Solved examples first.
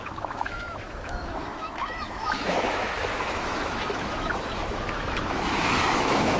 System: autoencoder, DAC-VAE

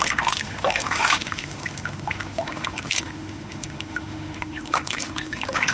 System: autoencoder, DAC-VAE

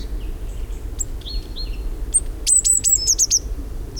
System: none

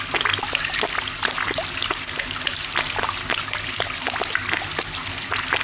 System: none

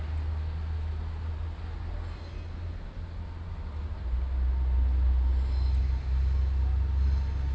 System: none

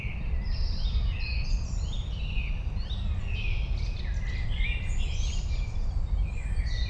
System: none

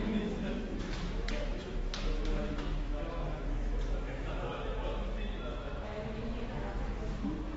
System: autoencoder, DAC-VAE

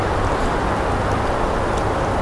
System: none